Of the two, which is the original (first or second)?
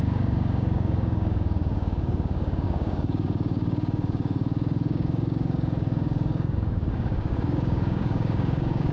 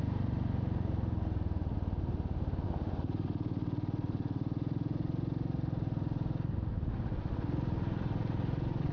second